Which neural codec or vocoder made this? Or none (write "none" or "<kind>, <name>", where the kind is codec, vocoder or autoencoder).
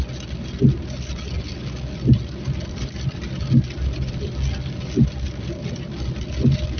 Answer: none